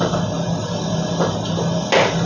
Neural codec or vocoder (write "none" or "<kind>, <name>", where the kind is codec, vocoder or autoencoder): none